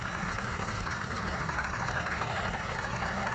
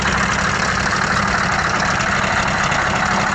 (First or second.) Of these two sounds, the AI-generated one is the first